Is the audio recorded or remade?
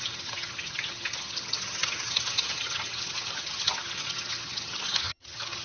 remade